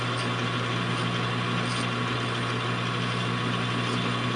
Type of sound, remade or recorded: recorded